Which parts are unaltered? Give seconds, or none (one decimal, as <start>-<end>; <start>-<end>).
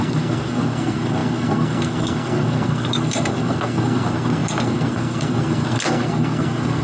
none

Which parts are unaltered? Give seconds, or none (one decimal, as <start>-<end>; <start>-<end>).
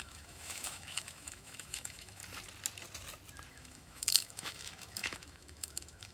2.2-3.5